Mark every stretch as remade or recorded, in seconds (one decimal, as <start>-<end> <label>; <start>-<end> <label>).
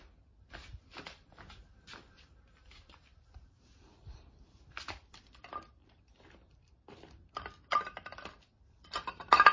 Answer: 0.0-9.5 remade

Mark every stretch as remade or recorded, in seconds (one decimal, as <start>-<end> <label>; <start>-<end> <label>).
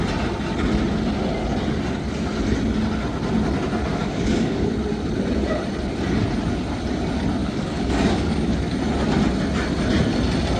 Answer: 0.0-3.9 recorded; 3.9-4.7 remade; 4.7-7.4 recorded; 7.4-8.6 remade; 8.6-10.6 recorded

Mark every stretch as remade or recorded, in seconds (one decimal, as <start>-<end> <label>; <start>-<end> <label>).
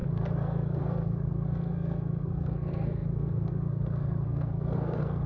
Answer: 0.0-5.3 remade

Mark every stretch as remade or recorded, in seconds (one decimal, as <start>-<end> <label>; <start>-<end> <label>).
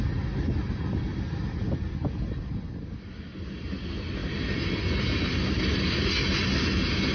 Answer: 0.0-7.1 recorded